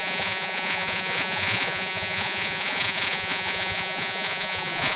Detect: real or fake fake